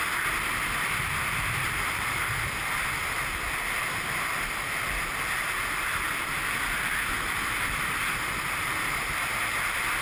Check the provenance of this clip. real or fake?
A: real